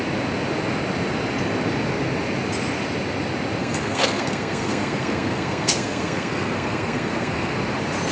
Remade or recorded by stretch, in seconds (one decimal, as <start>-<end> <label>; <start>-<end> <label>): 0.0-3.6 recorded; 3.6-7.5 remade; 7.5-8.1 recorded